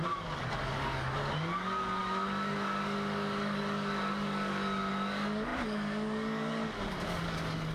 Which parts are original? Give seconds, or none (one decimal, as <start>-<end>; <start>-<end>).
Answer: none